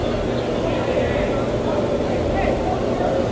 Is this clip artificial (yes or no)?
no